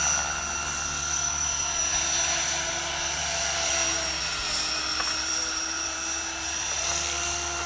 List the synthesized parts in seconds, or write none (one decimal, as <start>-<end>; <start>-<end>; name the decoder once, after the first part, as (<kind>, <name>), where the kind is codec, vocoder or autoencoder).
3.2-3.7 (vocoder, BigVGAN v2); 4.9-7.7